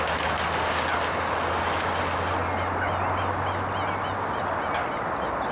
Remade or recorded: recorded